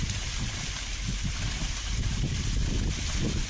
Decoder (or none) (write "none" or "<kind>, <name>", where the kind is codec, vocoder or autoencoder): vocoder, BigVGAN v2